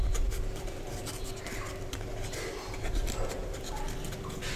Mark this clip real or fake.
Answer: fake